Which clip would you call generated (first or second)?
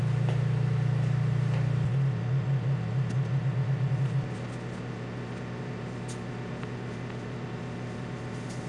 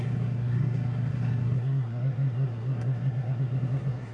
second